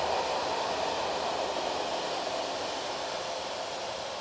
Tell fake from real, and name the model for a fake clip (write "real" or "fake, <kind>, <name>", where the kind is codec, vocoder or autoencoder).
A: real